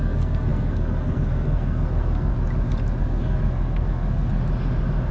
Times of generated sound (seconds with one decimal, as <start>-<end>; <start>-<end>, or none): 0.0-2.3; 3.0-4.3